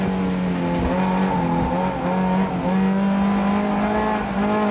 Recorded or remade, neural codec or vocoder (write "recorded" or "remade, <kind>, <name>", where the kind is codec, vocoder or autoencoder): recorded